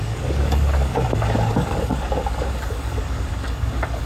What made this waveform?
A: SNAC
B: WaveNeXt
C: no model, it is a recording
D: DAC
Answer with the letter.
D